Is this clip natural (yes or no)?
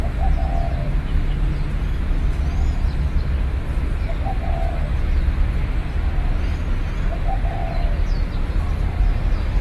yes